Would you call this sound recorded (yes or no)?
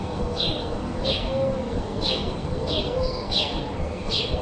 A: no